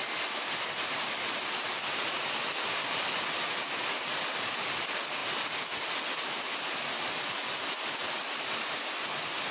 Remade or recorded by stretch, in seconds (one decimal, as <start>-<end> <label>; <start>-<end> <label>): 0.0-9.5 recorded